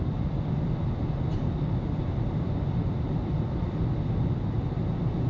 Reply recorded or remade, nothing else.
recorded